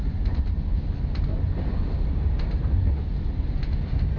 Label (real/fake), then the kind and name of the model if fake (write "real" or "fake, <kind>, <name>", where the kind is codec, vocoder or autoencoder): real